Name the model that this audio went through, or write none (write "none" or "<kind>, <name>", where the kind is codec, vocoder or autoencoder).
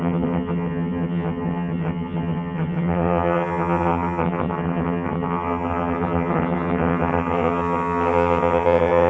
vocoder, HiFi-GAN